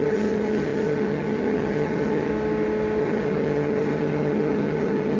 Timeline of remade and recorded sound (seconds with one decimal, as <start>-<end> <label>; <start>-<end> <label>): 0.0-2.3 remade; 2.3-3.0 recorded; 3.0-5.2 remade